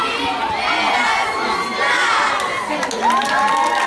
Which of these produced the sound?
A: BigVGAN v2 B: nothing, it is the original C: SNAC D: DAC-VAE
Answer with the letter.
B